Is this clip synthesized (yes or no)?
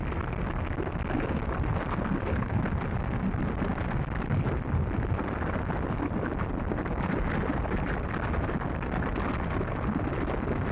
no